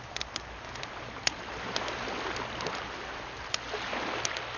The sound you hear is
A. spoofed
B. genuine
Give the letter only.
B